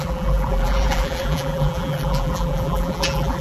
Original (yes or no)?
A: no